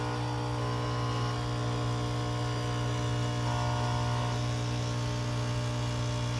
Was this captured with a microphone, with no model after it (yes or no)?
yes